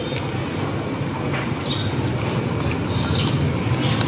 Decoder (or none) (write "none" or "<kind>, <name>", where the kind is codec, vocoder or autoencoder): none